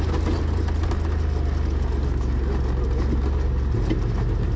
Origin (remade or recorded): recorded